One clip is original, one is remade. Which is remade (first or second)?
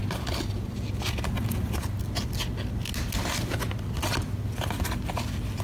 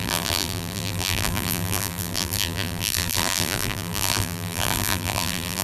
second